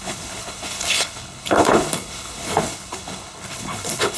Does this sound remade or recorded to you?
remade